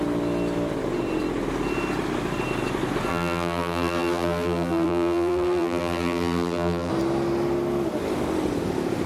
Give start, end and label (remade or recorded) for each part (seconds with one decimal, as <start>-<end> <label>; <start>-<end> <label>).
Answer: 0.0-3.1 recorded; 3.1-6.9 remade; 6.9-9.1 recorded